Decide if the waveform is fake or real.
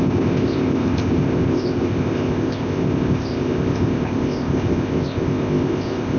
fake